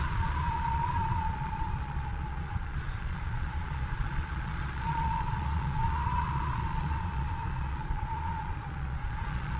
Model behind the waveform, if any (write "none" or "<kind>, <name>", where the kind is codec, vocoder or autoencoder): vocoder, Vocos